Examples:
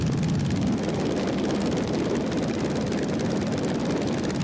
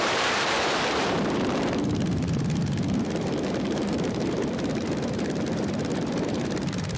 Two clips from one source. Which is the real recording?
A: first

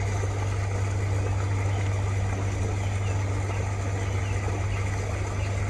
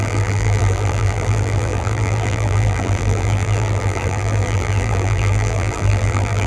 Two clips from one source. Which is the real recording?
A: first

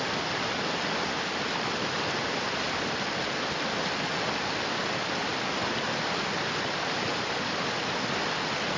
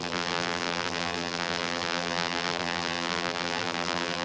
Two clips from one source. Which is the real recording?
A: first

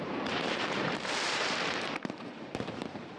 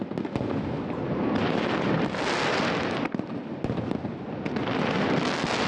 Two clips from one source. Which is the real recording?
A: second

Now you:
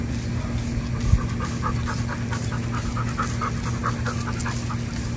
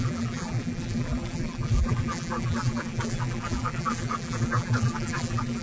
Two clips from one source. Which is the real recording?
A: first